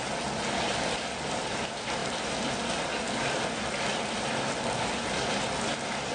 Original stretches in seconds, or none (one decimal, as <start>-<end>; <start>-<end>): 0.0-6.1